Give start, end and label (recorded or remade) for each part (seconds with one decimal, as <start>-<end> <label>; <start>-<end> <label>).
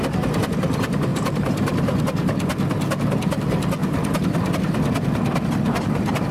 0.0-1.1 recorded; 1.1-2.0 remade; 2.0-3.8 recorded; 3.8-4.5 remade; 4.5-6.3 recorded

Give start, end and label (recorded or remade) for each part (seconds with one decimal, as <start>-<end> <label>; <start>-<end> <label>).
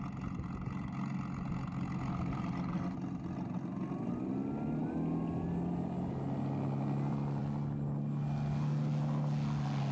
0.0-9.9 recorded